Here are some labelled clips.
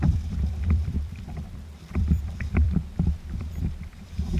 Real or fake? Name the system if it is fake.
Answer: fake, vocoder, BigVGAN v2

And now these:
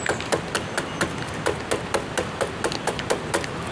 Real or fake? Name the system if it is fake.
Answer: real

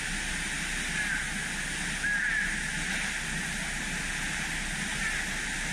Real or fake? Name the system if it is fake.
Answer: real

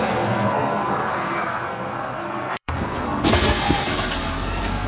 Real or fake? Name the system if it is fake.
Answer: fake, codec, SNAC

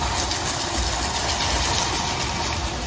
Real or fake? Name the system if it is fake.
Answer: real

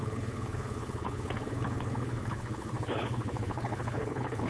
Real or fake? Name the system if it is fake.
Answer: fake, codec, HILCodec